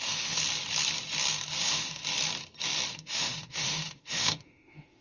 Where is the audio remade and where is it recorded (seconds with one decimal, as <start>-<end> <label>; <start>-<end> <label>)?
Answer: 0.0-0.4 remade; 0.4-1.6 recorded; 1.6-2.0 remade; 2.0-2.9 recorded; 2.9-5.0 remade